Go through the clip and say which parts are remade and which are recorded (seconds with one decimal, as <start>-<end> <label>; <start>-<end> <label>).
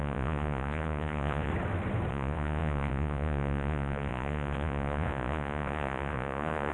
0.0-1.5 remade; 1.5-2.1 recorded; 2.1-6.7 remade